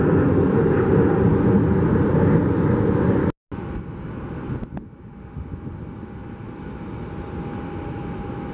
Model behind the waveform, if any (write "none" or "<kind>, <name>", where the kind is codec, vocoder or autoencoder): none